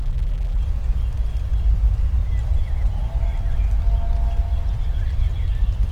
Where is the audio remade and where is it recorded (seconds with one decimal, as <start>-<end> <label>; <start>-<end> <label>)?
0.0-0.6 remade; 0.6-5.9 recorded